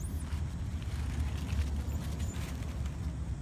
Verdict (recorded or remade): recorded